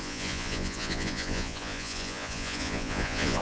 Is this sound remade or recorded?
remade